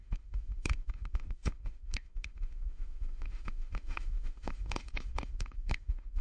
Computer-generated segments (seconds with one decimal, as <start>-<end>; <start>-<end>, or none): 0.0-6.2